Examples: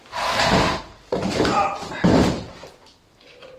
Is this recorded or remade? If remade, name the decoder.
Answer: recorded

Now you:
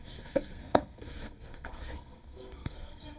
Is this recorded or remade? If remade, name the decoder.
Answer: remade, codec, SNAC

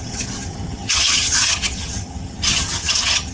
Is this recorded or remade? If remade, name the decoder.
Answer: remade, vocoder, HiFi-GAN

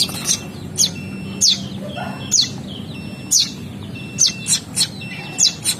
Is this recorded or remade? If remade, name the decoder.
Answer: recorded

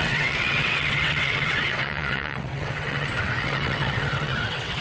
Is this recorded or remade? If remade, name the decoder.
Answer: remade, vocoder, WaveNeXt